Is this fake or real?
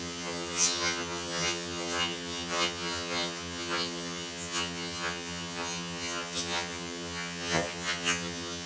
fake